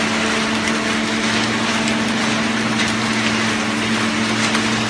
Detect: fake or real real